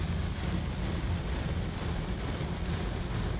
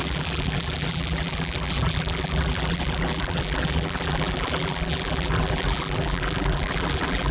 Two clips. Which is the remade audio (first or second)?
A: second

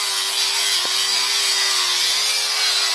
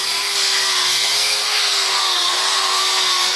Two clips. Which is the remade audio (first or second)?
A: second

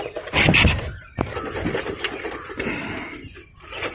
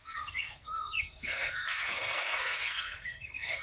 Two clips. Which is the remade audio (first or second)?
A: second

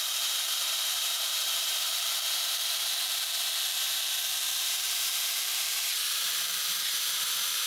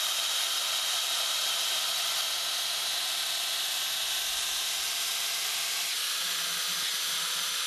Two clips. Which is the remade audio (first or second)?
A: first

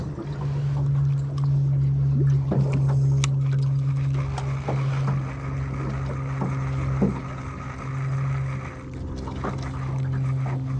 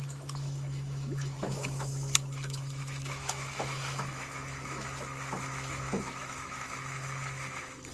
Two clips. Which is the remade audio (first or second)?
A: second